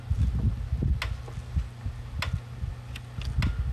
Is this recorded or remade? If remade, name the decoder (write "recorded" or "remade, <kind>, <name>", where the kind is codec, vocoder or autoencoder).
recorded